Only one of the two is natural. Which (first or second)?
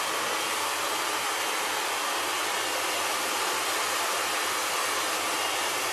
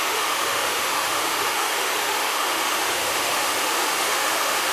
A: first